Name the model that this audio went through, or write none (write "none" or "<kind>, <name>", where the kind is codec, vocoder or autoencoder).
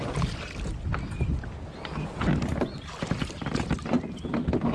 none